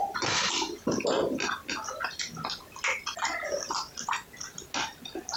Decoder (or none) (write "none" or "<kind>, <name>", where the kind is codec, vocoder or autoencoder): none